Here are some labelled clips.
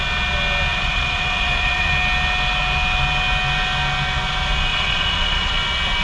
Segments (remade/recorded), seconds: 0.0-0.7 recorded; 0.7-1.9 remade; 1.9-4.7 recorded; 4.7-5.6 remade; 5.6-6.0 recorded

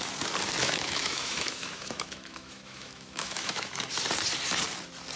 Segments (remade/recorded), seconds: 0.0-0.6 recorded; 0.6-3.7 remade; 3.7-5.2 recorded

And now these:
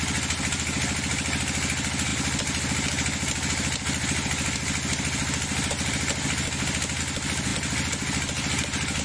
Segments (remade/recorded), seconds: 0.0-9.0 recorded

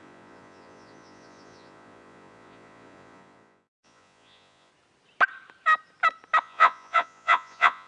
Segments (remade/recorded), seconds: 0.0-4.7 remade; 4.7-6.4 recorded; 6.4-7.9 remade